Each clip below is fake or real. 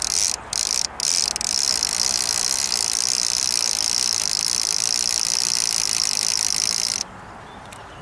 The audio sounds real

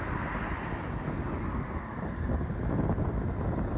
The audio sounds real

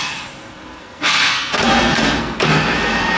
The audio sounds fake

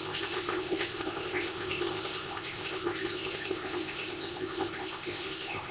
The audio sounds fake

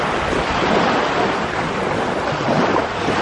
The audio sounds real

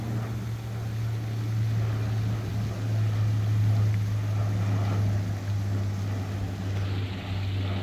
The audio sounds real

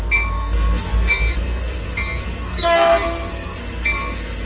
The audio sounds fake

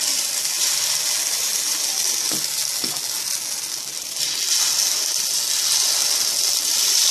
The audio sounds real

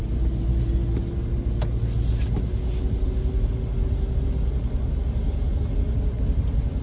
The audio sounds real